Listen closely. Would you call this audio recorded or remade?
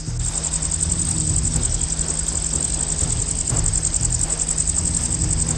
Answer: recorded